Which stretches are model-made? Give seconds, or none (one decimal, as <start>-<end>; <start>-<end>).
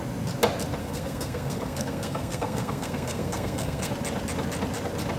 0.8-3.9